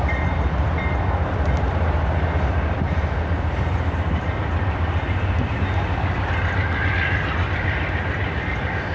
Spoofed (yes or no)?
yes